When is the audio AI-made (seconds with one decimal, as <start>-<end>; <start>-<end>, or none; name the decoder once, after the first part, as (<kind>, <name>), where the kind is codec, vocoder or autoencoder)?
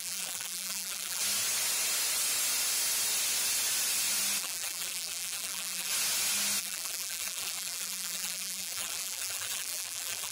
0.0-1.2 (vocoder, BigVGAN v2); 4.4-5.9; 6.6-10.3